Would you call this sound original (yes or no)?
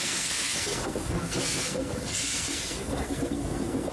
no